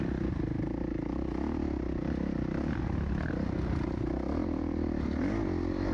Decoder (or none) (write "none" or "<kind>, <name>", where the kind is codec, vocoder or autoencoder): none